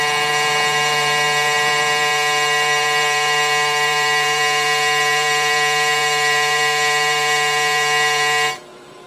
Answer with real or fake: fake